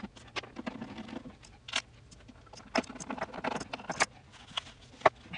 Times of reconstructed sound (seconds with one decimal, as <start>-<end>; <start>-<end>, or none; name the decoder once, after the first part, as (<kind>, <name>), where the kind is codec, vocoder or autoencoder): none